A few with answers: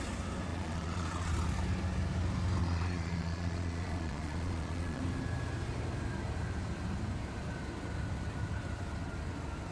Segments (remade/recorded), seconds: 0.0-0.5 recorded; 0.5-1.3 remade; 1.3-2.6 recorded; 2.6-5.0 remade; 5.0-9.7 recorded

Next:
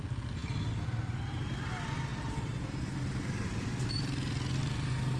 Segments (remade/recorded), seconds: 0.0-5.2 recorded

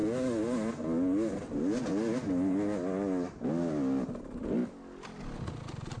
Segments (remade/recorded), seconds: 0.0-6.0 recorded